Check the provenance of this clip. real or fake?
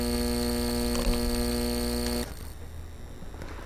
real